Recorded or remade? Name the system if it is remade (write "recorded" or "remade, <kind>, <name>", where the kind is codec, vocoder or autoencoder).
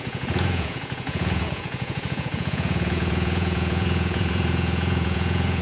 remade, vocoder, Vocos